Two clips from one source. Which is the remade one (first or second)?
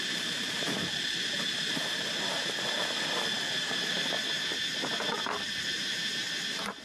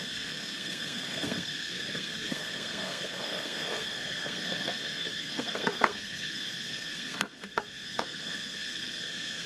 second